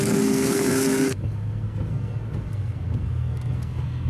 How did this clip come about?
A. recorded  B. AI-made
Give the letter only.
B